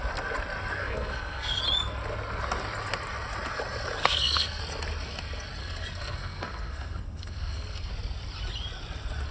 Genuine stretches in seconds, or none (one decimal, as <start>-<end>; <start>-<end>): 0.0-0.8; 1.6-4.0; 4.6-5.6; 7.9-9.3